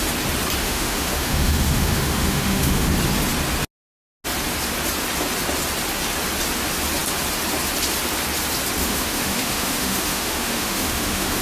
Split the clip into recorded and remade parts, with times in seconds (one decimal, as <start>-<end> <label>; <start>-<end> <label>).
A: 0.0-0.6 recorded; 0.6-2.9 remade; 2.9-8.8 recorded; 8.8-11.4 remade